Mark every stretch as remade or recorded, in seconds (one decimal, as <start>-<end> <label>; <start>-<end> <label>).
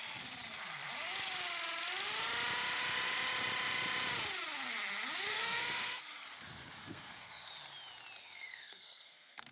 0.0-5.3 recorded; 5.3-6.0 remade; 6.0-6.8 recorded; 6.8-7.5 remade; 7.5-8.2 recorded; 8.2-9.5 remade